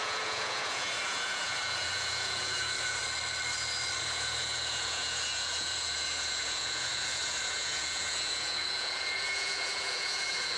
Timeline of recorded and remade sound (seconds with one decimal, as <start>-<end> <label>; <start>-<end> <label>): 0.0-3.0 remade; 3.0-4.0 recorded; 4.0-10.6 remade